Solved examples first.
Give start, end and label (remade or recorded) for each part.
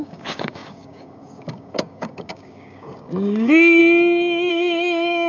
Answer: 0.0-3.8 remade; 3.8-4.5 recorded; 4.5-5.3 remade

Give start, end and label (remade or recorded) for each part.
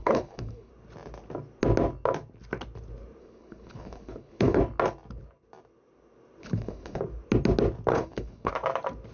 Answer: 0.0-0.7 remade; 0.7-3.2 recorded; 3.2-4.6 remade; 4.6-6.4 recorded; 6.4-7.0 remade; 7.0-7.9 recorded; 7.9-8.5 remade; 8.5-9.1 recorded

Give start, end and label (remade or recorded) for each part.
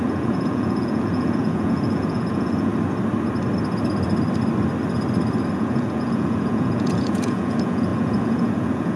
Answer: 0.0-2.7 remade; 2.7-5.5 recorded; 5.5-9.0 remade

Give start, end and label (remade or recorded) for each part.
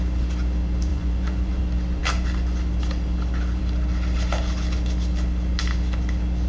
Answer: 0.0-0.9 recorded; 0.9-1.6 remade; 1.6-6.5 recorded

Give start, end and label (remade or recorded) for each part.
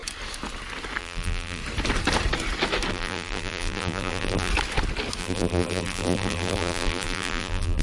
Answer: 0.0-1.0 recorded; 1.0-1.6 remade; 1.6-2.9 recorded; 2.9-4.5 remade; 4.5-5.2 recorded; 5.2-7.8 remade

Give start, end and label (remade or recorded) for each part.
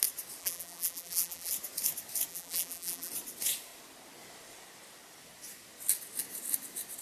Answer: 0.0-0.4 recorded; 0.4-1.5 remade; 1.5-2.3 recorded; 2.3-3.1 remade; 3.1-7.0 recorded